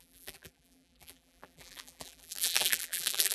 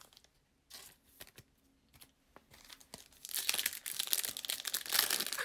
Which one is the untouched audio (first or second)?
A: second